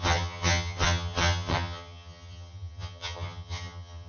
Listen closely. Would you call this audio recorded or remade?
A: remade